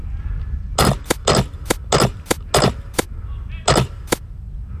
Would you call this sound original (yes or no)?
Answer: yes